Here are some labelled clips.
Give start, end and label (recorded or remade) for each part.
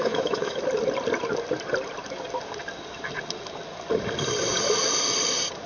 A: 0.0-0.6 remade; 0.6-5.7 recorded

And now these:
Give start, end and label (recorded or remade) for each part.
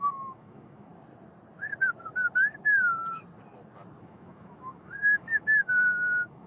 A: 0.0-0.9 remade; 0.9-4.0 recorded; 4.0-6.5 remade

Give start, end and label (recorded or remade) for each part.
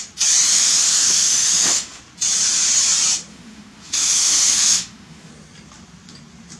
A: 0.0-0.5 recorded; 0.5-2.0 remade; 2.0-3.3 recorded; 3.3-5.3 remade; 5.3-6.6 recorded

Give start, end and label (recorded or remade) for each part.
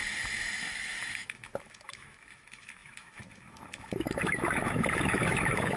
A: 0.0-0.6 recorded; 0.6-5.8 remade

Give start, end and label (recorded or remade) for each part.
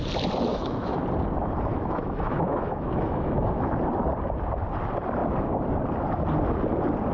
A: 0.0-0.5 recorded; 0.5-1.0 remade; 1.0-1.7 recorded; 1.7-3.7 remade; 3.7-7.1 recorded